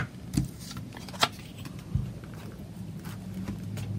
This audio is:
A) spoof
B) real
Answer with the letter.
B